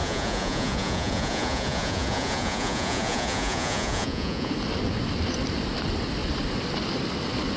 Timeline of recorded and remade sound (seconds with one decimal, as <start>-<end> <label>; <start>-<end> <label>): 0.0-4.5 remade; 4.5-7.6 recorded